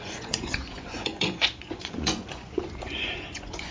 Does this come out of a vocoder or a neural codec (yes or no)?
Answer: yes